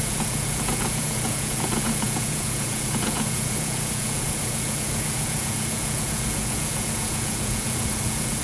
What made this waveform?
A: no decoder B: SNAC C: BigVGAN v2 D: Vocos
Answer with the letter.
D